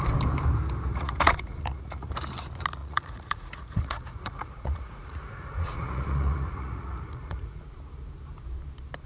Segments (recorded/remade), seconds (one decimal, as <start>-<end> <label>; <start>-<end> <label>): 0.0-0.9 recorded; 0.9-2.1 remade; 2.1-2.8 recorded; 2.8-7.6 remade; 7.6-9.1 recorded